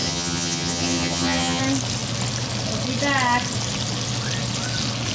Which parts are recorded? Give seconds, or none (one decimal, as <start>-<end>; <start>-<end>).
1.6-5.1